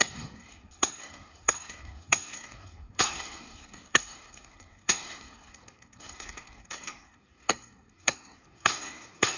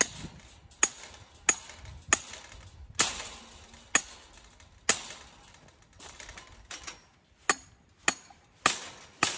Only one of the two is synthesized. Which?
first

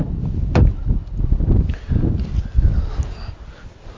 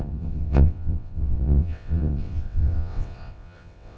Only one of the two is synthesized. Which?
second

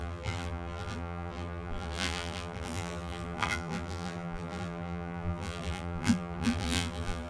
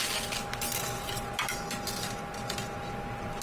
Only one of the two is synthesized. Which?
first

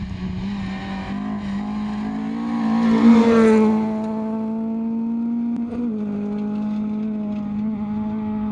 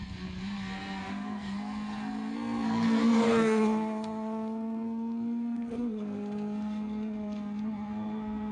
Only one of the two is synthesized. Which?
second